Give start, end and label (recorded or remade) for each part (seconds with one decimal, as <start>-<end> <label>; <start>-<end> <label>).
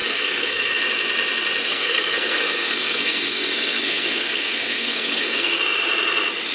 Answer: 0.0-0.8 remade; 0.8-1.7 recorded; 1.7-5.6 remade; 5.6-6.5 recorded